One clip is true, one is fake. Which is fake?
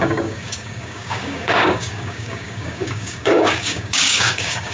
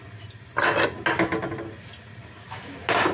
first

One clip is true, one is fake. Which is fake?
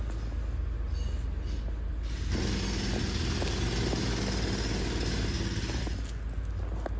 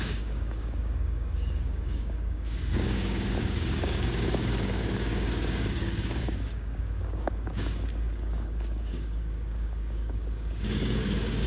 second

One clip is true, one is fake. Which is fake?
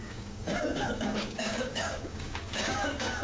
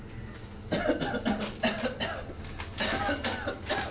first